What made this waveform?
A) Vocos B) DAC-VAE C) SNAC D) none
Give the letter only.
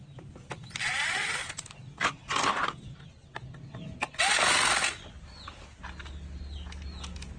D